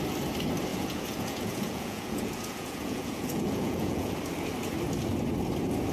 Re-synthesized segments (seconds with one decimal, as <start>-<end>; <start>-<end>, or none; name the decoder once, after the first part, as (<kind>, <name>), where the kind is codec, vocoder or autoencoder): 0.7-4.2 (vocoder, Vocos)